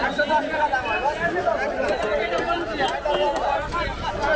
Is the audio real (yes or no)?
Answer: yes